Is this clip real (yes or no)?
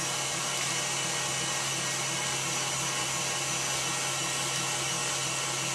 yes